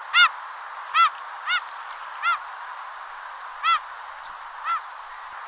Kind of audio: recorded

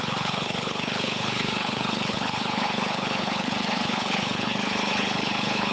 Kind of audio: remade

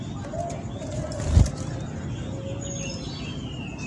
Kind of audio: recorded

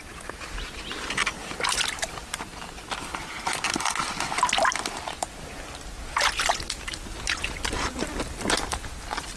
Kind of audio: recorded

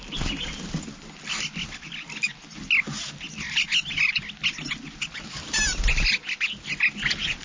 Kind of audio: recorded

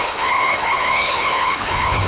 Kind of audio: remade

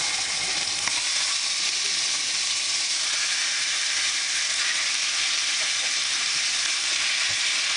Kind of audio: recorded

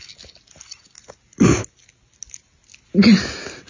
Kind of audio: recorded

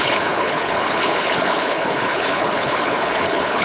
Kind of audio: remade